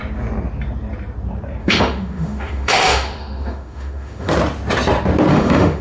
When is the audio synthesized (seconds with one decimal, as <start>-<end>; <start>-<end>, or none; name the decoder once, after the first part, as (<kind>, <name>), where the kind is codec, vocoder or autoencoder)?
1.6-4.3 (autoencoder, DAC-VAE); 5.3-5.8